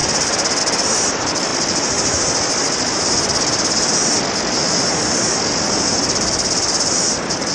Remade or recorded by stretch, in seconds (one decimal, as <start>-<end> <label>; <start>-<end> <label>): 0.0-0.6 recorded; 0.6-1.5 remade; 1.5-5.5 recorded; 5.5-7.5 remade

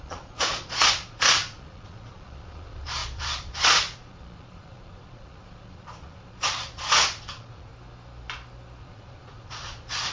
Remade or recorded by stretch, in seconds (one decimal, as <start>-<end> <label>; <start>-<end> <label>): 0.0-7.7 remade; 7.7-8.8 recorded; 8.8-10.1 remade

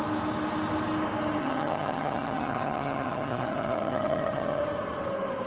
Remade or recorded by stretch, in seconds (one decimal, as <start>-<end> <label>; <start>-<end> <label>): 0.0-1.4 recorded; 1.4-4.6 remade; 4.6-5.5 recorded

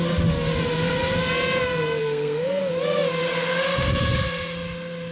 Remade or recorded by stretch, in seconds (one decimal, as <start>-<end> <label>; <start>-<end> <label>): 0.0-2.0 recorded; 2.0-2.6 remade; 2.6-5.1 recorded

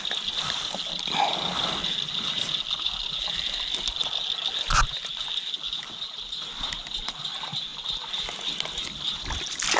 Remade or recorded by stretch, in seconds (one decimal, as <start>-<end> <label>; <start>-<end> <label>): 0.0-9.8 recorded

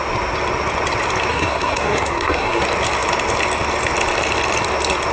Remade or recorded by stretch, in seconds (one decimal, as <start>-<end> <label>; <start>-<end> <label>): 0.0-1.3 recorded; 1.3-2.6 remade; 2.6-5.1 recorded